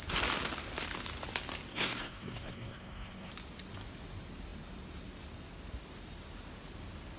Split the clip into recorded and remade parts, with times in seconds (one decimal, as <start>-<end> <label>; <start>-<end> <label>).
0.0-1.7 recorded; 1.7-3.3 remade; 3.3-7.2 recorded